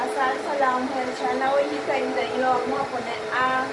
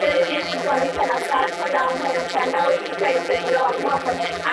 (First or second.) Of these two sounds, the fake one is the second